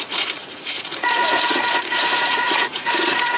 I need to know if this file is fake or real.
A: fake